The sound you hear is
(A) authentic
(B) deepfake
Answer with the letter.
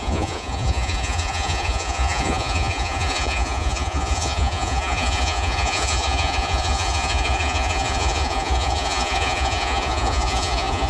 B